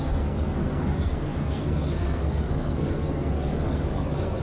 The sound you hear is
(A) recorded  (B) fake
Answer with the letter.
B